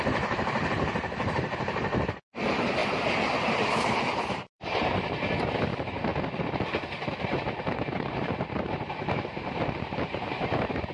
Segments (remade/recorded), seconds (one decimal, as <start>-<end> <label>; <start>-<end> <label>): 0.0-6.1 remade; 6.1-7.2 recorded; 7.2-10.9 remade